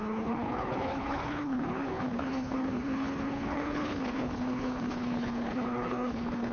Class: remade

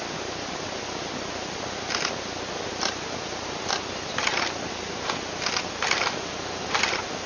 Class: recorded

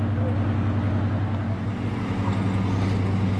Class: recorded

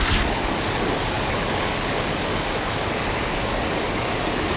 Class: remade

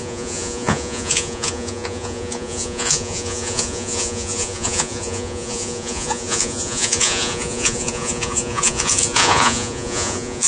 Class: remade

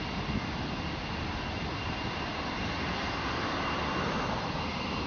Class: recorded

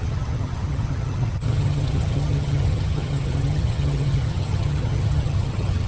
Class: remade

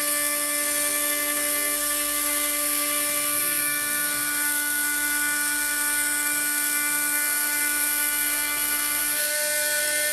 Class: remade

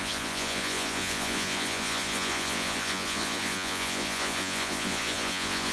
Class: remade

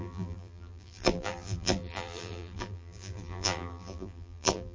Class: remade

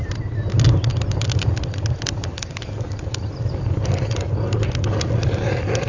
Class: recorded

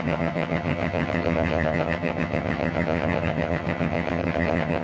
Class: remade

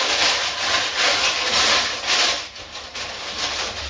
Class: recorded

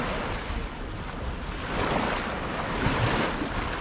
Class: recorded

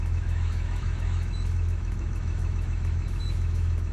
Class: remade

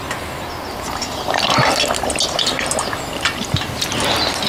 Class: recorded